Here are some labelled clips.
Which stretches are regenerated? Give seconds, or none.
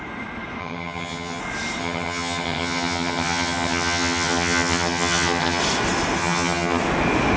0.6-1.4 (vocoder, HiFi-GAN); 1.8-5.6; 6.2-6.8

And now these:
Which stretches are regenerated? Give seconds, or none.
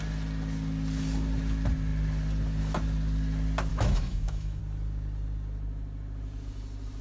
3.7-4.6 (autoencoder, DAC-VAE)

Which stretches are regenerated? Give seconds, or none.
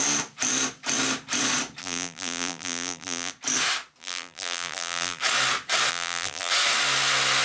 1.8-3.3 (vocoder, BigVGAN v2); 4.0-5.2; 5.9-6.5